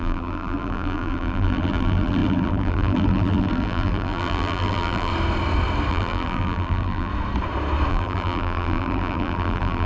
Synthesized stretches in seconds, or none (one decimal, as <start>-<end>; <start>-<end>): 0.0-5.1; 5.9-7.1; 7.9-9.9